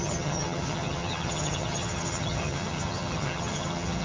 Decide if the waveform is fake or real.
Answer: fake